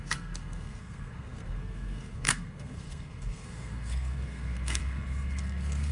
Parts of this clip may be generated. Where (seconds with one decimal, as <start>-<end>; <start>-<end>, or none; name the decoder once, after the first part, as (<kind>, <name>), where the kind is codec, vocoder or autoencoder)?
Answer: 0.0-5.9 (codec, SNAC)